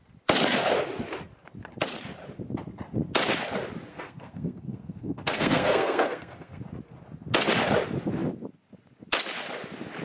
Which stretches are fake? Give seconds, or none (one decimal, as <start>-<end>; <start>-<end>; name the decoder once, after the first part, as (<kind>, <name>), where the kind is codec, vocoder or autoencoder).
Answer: 3.9-6.6 (codec, SNAC)